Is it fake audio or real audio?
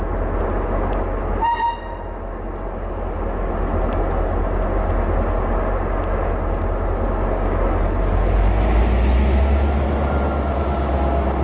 real